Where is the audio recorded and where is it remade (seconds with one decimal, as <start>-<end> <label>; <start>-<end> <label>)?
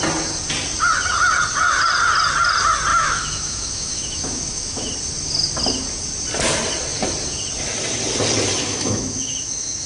0.0-2.9 recorded; 2.9-4.9 remade; 4.9-8.6 recorded; 8.6-9.9 remade